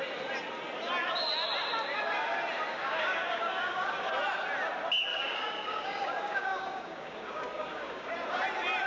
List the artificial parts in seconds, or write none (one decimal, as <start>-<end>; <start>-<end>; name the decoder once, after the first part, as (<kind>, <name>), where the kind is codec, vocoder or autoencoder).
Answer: 2.7-4.1 (codec, DAC); 5.1-8.1